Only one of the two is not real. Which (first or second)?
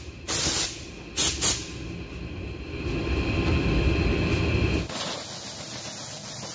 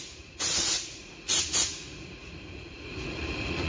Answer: second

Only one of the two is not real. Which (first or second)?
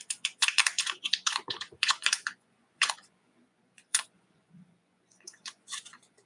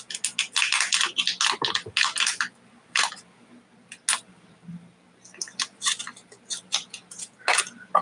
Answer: first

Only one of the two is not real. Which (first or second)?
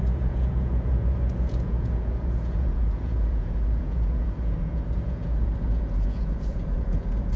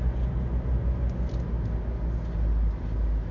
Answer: first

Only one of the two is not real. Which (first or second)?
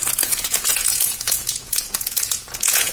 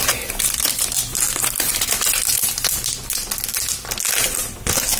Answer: first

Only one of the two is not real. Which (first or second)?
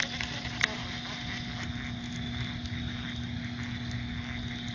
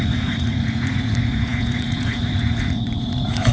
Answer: second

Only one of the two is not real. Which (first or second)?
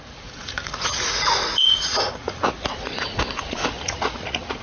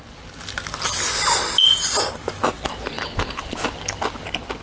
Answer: first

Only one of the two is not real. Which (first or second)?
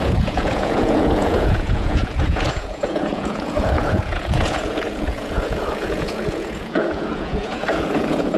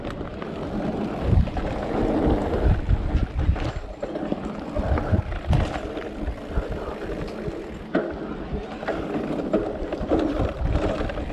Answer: first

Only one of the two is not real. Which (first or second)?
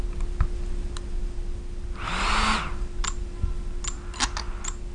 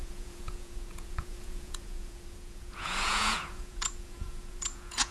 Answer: second